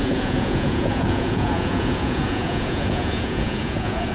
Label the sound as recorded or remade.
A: remade